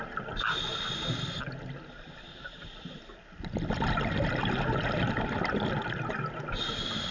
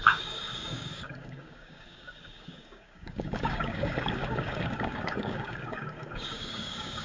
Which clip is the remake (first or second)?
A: second